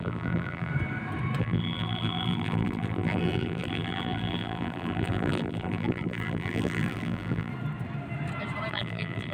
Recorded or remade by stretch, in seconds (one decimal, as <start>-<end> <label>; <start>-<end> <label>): 0.0-0.7 remade; 0.7-1.4 recorded; 1.4-7.5 remade; 7.5-8.7 recorded; 8.7-9.3 remade